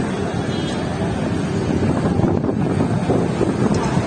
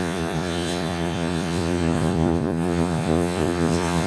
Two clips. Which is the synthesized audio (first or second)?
second